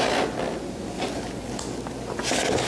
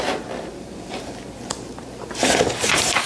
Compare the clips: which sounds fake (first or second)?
second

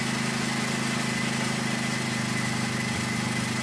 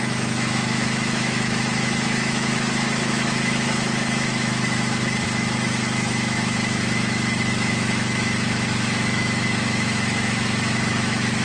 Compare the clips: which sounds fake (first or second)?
second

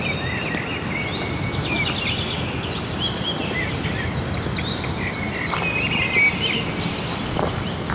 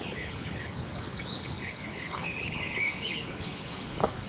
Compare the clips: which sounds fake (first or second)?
second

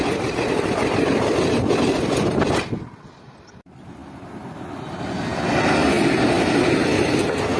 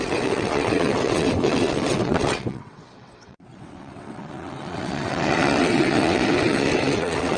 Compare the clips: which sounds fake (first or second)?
second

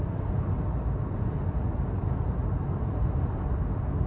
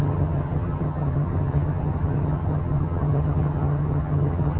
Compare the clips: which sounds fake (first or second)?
second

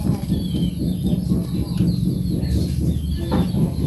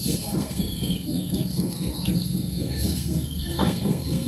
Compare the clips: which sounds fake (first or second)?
second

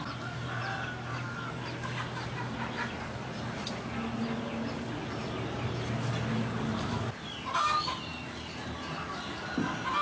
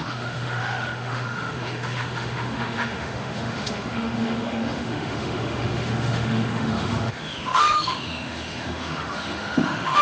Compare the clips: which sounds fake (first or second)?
second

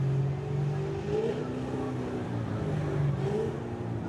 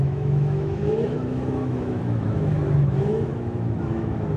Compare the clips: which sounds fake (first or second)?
second